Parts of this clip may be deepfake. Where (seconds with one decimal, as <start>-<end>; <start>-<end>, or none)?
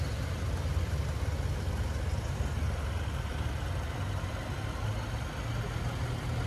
none